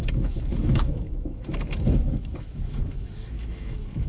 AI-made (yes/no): yes